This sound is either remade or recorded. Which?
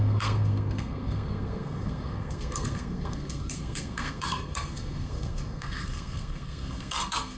remade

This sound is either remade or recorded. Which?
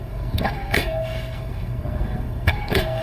remade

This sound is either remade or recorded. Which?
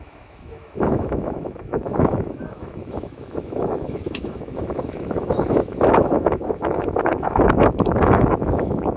remade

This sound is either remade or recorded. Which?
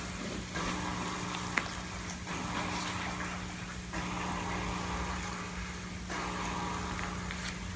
recorded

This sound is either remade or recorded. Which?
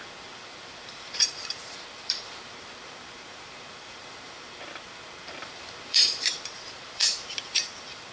remade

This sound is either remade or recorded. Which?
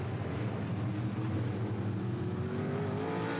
recorded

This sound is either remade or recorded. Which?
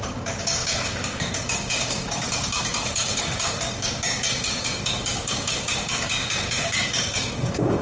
remade